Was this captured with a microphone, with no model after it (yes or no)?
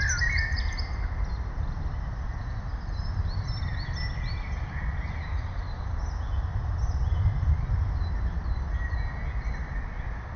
yes